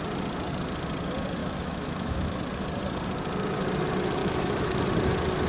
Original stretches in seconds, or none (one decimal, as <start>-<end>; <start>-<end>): 0.0-1.4; 2.4-4.2; 4.8-5.5